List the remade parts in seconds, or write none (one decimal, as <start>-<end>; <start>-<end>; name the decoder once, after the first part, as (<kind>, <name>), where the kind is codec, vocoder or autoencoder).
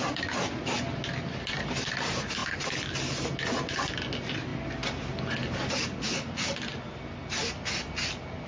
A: none